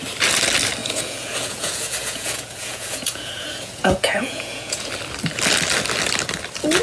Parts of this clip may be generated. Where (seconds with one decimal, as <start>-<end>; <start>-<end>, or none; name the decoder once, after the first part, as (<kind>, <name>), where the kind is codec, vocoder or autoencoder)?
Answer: 0.8-4.9 (vocoder, Vocos)